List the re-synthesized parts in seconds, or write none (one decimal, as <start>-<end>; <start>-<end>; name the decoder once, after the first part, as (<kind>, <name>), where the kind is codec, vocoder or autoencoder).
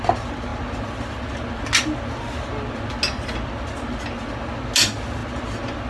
none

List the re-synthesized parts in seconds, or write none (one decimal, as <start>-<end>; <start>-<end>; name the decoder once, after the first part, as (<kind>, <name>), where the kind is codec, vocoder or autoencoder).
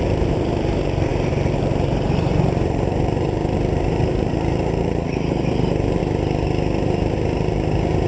0.0-6.0 (vocoder, BigVGAN v2)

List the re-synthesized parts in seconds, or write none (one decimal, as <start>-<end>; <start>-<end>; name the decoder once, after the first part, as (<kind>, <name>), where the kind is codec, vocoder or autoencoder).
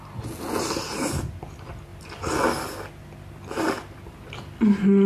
none